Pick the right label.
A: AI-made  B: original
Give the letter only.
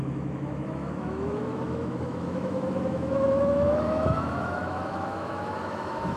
A